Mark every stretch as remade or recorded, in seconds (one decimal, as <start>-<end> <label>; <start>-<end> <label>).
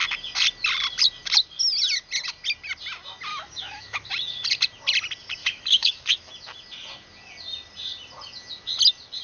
0.0-3.3 recorded; 3.3-4.1 remade; 4.1-5.4 recorded; 5.4-6.3 remade; 6.3-9.2 recorded